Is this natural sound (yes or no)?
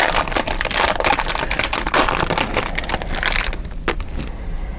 yes